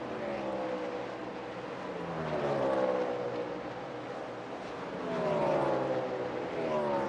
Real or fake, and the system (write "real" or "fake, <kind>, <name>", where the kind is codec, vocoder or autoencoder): real